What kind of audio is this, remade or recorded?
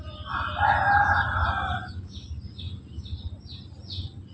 recorded